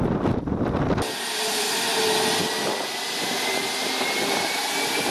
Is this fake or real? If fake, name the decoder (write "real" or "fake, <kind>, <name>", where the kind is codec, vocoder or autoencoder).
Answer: real